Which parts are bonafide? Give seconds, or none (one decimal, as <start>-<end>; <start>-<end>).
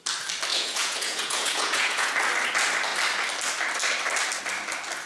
0.0-0.5; 2.1-5.1